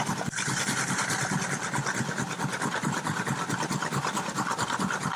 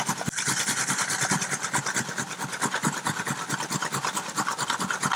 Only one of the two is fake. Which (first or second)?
first